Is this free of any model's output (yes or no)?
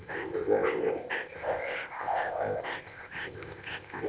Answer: no